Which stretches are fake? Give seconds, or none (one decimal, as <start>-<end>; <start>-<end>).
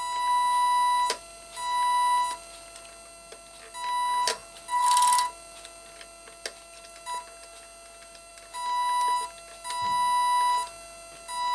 none